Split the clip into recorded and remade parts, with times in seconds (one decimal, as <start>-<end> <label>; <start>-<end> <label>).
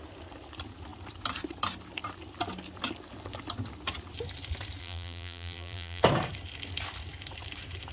0.0-4.8 recorded; 4.8-6.0 remade; 6.0-7.9 recorded